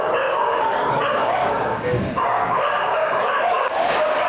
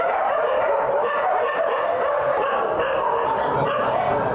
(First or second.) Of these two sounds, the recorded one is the second